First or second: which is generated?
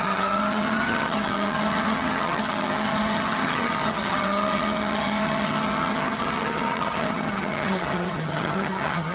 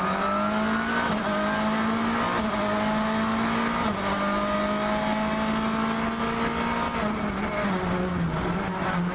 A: first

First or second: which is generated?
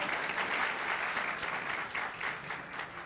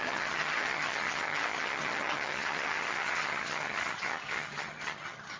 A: second